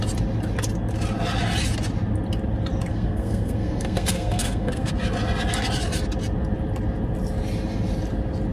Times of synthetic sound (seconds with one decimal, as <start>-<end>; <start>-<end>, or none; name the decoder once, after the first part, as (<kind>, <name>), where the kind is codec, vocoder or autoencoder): 2.9-4.9 (codec, SNAC)